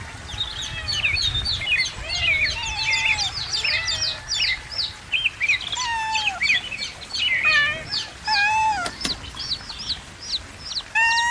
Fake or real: real